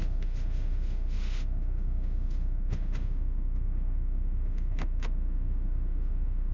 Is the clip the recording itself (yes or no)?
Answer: no